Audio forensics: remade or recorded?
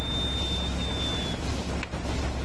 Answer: recorded